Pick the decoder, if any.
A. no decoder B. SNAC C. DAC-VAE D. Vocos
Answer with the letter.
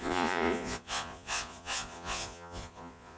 D